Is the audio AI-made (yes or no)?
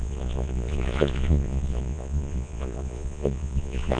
yes